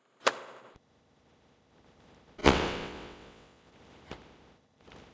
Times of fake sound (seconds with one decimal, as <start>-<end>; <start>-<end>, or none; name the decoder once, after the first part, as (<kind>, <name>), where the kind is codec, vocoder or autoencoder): 2.4-3.7 (vocoder, WaveNeXt)